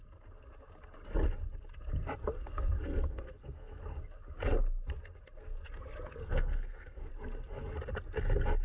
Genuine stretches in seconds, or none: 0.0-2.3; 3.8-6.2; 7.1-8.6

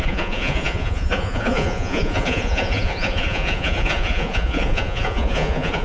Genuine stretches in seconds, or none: none